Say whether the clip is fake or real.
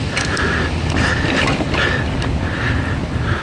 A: real